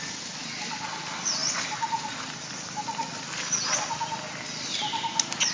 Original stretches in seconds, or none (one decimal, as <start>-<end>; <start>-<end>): 0.0-5.5